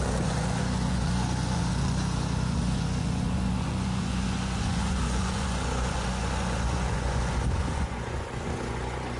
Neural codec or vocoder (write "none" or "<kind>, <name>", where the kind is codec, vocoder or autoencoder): vocoder, Vocos